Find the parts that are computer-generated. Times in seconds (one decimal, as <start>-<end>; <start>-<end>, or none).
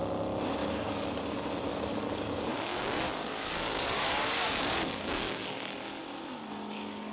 0.6-1.2; 1.7-6.0